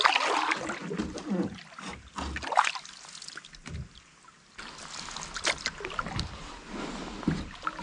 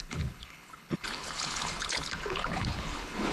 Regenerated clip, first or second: second